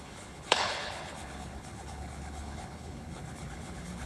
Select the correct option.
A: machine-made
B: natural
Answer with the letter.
A